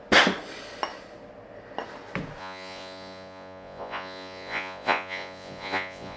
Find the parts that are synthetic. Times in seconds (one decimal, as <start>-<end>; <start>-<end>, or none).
2.4-6.2